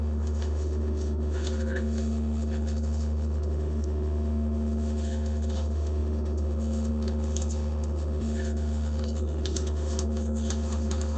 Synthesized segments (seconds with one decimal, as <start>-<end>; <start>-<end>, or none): 0.0-11.2